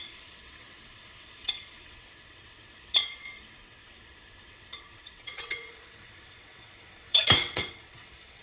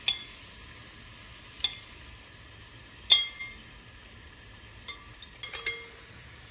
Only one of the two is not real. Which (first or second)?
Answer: first